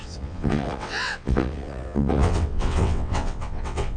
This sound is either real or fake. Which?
fake